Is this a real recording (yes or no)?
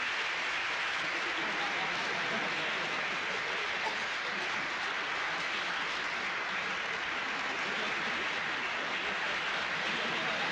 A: yes